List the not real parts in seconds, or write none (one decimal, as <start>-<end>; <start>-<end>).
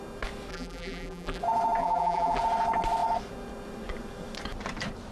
0.5-1.4; 1.8-2.4